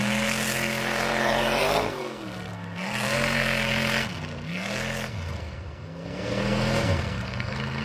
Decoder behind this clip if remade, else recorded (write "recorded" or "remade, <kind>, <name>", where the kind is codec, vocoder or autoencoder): remade, codec, SNAC